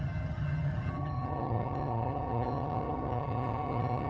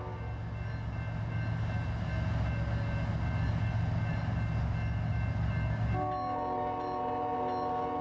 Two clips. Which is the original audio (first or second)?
second